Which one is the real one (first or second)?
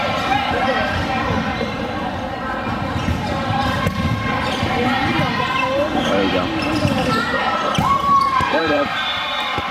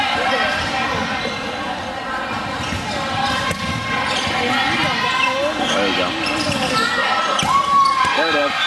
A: second